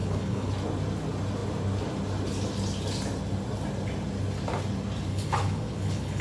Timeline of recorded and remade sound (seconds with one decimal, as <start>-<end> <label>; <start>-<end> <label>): 0.0-0.5 remade; 0.5-5.1 recorded; 5.1-6.2 remade

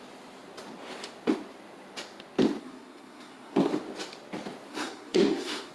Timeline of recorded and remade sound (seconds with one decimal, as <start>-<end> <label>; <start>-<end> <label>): 0.0-2.6 recorded; 2.6-3.7 remade; 3.7-4.7 recorded; 4.7-5.7 remade

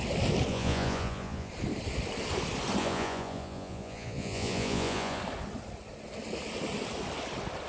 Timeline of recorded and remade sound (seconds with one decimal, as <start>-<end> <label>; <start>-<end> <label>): 0.0-0.5 recorded; 0.5-1.5 remade; 1.5-2.8 recorded; 2.8-5.2 remade; 5.2-7.7 recorded

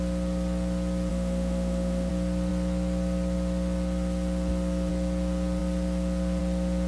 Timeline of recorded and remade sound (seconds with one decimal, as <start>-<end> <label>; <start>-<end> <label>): 0.0-1.1 recorded; 1.1-2.1 remade; 2.1-6.9 recorded

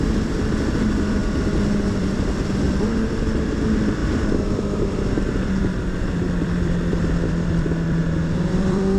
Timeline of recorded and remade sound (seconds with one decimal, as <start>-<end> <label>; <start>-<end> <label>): 0.0-1.2 remade; 1.2-1.8 recorded; 1.8-8.0 remade; 8.0-8.5 recorded; 8.5-9.0 remade

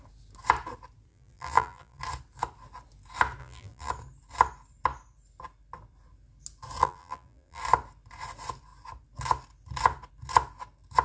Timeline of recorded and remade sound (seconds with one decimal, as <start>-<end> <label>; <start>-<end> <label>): 0.0-1.1 recorded; 1.1-2.0 remade; 2.0-3.4 recorded; 3.4-3.9 remade; 3.9-6.8 recorded; 6.8-7.6 remade; 7.6-11.0 recorded